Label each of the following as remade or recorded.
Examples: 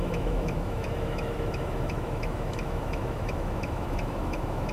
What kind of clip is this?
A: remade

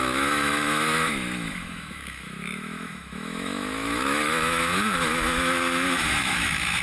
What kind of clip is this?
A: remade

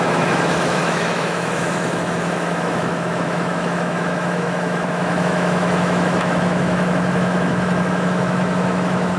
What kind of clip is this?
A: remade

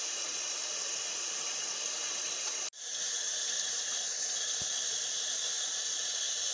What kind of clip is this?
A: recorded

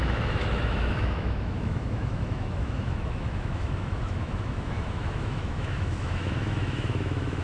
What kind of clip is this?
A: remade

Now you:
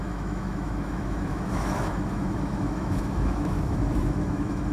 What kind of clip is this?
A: remade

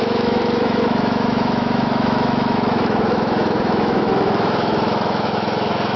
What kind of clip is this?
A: remade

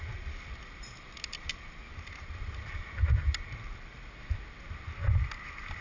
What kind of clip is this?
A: recorded